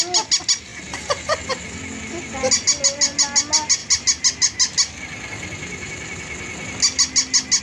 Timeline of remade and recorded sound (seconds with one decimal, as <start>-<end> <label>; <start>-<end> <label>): 0.0-7.6 recorded